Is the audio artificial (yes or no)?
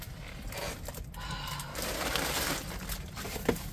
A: no